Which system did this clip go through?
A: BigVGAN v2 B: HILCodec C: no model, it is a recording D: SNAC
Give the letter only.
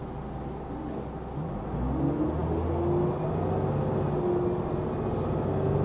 C